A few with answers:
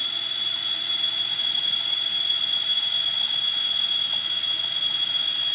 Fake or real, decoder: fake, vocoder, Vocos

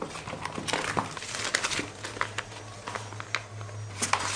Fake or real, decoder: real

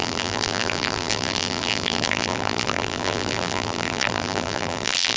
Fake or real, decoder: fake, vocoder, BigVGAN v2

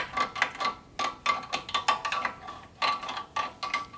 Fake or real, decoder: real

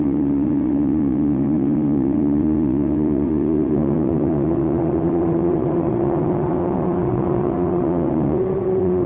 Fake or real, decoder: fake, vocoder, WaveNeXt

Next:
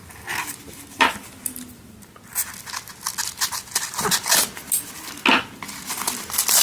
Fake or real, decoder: real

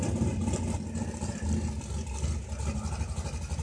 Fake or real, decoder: real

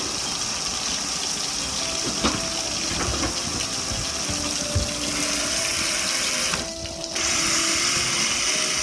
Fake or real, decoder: real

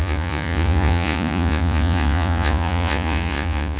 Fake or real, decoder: fake, vocoder, Vocos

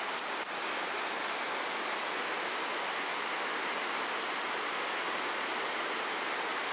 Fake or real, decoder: real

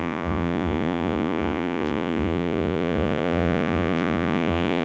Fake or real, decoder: fake, vocoder, Vocos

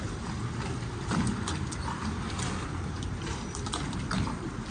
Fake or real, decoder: fake, vocoder, BigVGAN v2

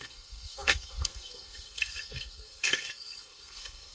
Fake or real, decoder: fake, codec, SNAC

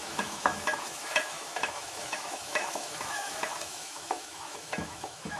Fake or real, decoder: fake, autoencoder, DAC-VAE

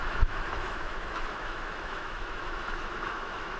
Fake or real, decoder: fake, autoencoder, DAC-VAE